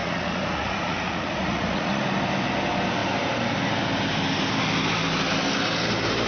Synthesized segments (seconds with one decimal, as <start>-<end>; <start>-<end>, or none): 0.0-2.0